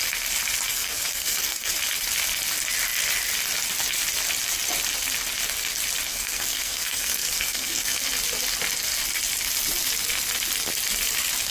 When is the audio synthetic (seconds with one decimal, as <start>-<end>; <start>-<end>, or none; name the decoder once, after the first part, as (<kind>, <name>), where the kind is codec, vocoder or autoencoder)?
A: 0.7-1.7 (codec, SNAC); 6.1-8.0